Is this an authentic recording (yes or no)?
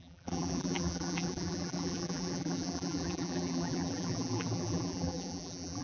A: no